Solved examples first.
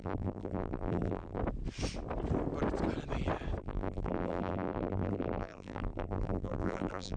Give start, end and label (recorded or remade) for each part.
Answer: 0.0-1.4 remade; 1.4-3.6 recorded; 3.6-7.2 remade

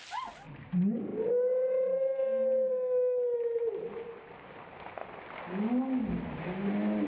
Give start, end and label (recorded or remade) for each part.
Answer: 0.0-7.1 recorded

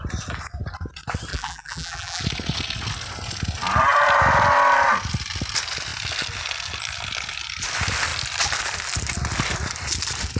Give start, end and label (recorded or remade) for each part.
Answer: 0.0-1.3 recorded; 1.3-2.2 remade; 2.2-10.4 recorded

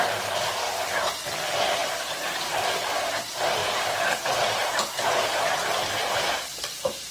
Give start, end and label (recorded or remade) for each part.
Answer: 0.0-1.8 recorded; 1.8-3.2 remade; 3.2-3.6 recorded; 3.6-6.6 remade; 6.6-7.1 recorded